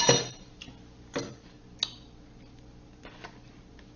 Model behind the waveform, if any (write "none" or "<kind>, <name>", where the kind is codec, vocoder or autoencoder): none